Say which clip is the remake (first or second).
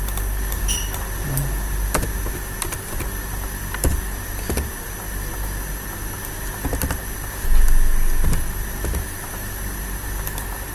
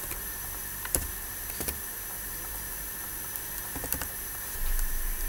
second